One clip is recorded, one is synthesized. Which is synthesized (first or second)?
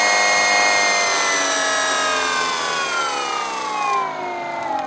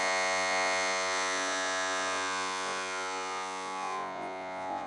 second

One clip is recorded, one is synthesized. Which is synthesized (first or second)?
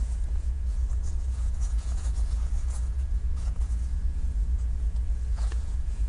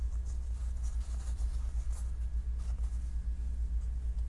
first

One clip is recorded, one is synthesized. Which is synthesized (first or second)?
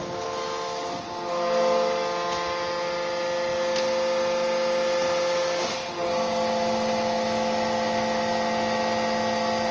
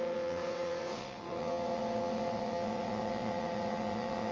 second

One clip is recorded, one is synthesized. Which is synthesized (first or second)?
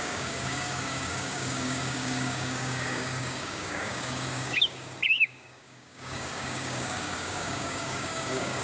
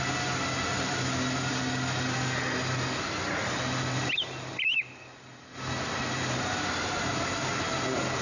first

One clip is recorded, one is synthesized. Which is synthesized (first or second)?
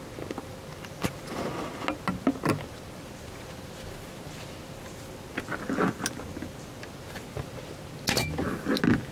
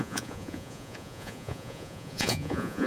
second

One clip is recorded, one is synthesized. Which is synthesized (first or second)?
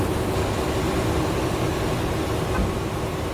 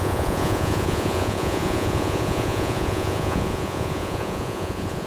second